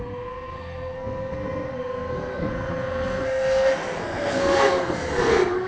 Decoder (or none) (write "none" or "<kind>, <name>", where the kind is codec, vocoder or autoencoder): codec, SNAC